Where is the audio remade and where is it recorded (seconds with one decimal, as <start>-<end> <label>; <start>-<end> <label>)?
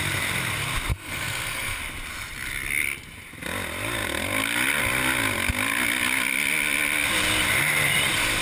0.0-0.9 recorded; 0.9-1.8 remade; 1.8-8.4 recorded